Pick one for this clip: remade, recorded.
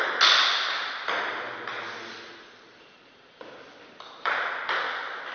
recorded